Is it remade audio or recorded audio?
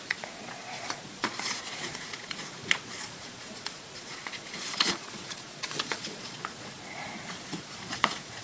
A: remade